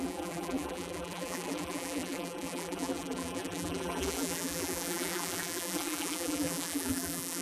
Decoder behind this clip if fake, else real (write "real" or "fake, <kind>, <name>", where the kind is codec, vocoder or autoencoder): fake, vocoder, BigVGAN v2